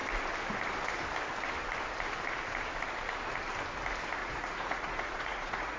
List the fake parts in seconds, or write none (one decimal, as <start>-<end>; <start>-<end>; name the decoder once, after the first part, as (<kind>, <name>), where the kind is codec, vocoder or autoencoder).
4.2-5.8 (vocoder, Vocos)